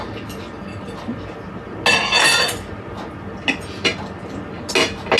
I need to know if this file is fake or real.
real